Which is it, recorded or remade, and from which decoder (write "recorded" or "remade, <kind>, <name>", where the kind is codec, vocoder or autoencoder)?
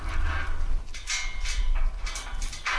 recorded